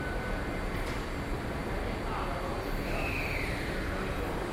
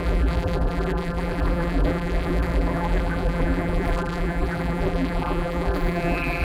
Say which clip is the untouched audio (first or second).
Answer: first